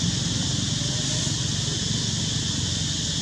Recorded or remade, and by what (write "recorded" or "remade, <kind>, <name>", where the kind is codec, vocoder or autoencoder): recorded